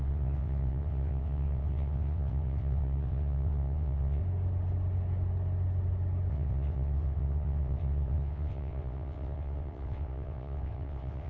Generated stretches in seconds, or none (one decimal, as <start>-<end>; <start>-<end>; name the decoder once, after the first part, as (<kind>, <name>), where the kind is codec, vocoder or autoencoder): 0.0-4.2 (vocoder, WaveNeXt); 6.3-11.3